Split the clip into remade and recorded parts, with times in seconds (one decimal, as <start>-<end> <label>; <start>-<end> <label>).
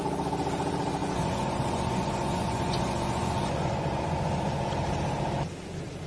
0.0-1.0 recorded; 1.0-4.7 remade; 4.7-6.1 recorded